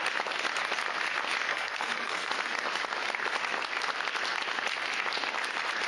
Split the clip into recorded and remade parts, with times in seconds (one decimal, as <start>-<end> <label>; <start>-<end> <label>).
0.0-1.5 recorded; 1.5-2.3 remade; 2.3-5.9 recorded